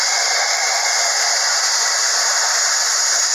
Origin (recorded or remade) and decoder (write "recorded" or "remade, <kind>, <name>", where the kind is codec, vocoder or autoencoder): remade, vocoder, BigVGAN v2